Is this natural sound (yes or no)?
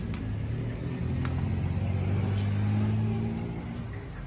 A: yes